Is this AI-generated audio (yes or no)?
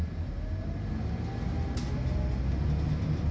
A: no